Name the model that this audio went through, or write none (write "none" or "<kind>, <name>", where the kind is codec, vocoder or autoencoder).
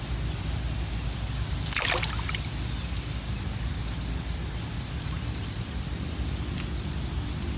none